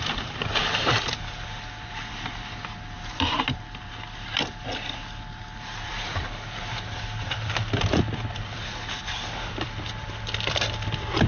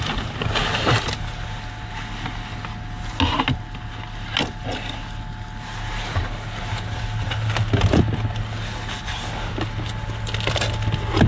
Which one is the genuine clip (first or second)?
second